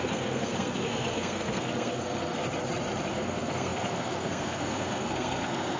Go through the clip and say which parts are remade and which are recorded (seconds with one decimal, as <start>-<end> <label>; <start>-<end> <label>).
0.0-2.4 remade; 2.4-3.1 recorded; 3.1-5.8 remade

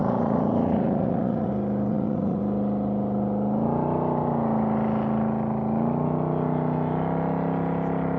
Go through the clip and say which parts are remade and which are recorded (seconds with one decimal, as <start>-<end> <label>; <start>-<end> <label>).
0.0-1.5 remade; 1.5-1.9 recorded; 1.9-2.4 remade; 2.4-8.2 recorded

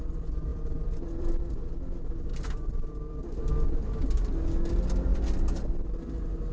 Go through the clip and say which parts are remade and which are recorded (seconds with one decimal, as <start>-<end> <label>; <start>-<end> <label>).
0.0-0.5 recorded; 0.5-1.3 remade; 1.3-2.3 recorded; 2.3-3.5 remade; 3.5-6.5 recorded

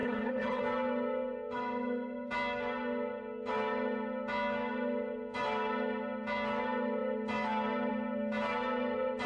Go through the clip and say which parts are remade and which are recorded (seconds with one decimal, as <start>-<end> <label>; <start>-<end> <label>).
0.0-0.6 remade; 0.6-9.3 recorded